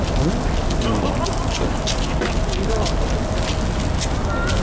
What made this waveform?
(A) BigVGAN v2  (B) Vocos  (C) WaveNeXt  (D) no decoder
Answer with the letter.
D